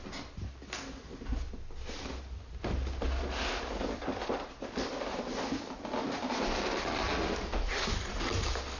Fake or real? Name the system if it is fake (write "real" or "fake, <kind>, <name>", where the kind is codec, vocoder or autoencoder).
real